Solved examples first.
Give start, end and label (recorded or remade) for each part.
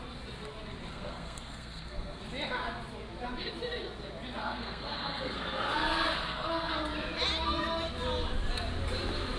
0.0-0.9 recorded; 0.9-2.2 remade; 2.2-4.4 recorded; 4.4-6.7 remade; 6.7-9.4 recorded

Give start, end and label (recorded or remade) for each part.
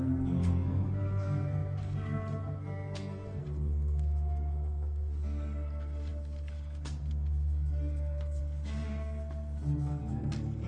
0.0-10.7 remade